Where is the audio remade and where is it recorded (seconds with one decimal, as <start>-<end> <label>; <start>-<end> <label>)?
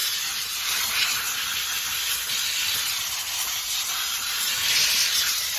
0.0-3.2 recorded; 3.2-5.6 remade